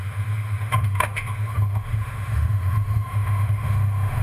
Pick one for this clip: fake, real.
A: fake